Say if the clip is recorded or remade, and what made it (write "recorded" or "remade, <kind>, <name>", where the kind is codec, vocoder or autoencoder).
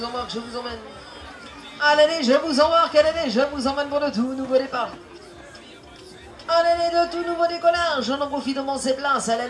recorded